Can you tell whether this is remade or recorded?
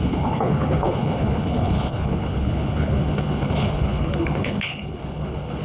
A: remade